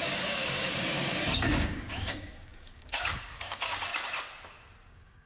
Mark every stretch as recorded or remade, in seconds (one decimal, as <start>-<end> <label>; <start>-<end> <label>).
0.0-3.9 remade; 3.9-4.8 recorded; 4.8-5.3 remade